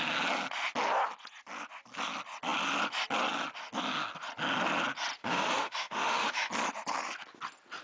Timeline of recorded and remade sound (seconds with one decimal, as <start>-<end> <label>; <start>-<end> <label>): 0.0-5.2 recorded; 5.2-6.5 remade; 6.5-7.8 recorded